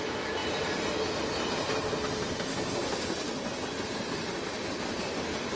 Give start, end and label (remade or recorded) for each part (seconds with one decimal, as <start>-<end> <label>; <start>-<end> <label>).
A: 0.0-5.6 recorded